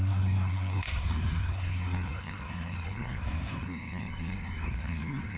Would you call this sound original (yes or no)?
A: no